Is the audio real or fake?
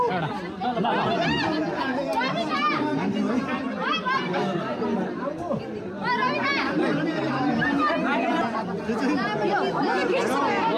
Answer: real